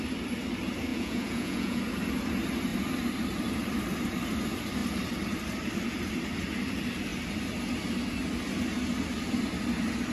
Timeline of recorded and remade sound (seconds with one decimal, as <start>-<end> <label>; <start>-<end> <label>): 0.0-0.9 recorded; 0.9-1.8 remade; 1.8-10.1 recorded